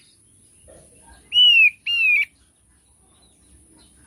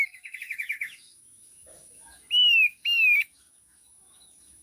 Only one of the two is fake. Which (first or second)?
second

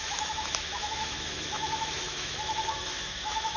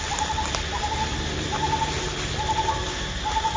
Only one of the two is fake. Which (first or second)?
first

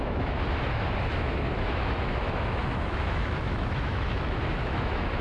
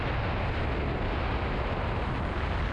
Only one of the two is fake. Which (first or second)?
first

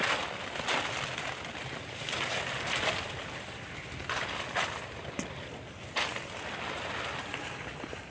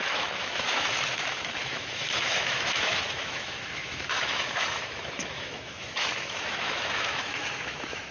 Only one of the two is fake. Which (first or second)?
second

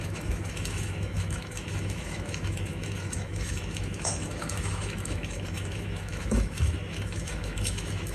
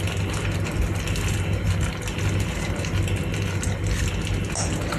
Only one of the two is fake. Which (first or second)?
first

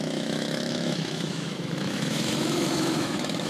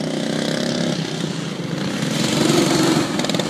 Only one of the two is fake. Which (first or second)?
first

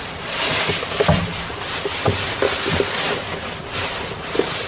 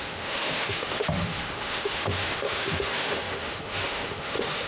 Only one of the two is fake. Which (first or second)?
second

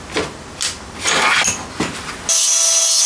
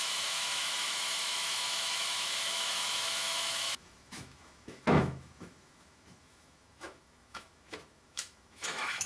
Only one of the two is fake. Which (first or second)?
second